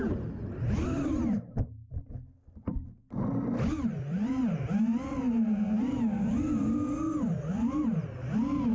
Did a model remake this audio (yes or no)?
no